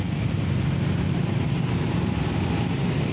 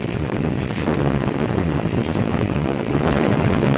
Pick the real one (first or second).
first